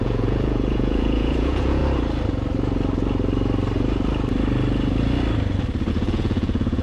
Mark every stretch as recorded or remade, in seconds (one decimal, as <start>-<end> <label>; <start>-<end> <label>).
0.0-1.8 remade; 1.8-5.9 recorded; 5.9-6.8 remade

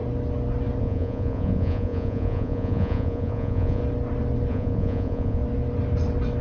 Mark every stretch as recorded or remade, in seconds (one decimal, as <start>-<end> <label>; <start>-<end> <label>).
0.0-0.8 recorded; 0.8-3.8 remade; 3.8-4.5 recorded; 4.5-5.4 remade; 5.4-6.4 recorded